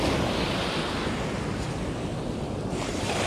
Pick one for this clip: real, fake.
real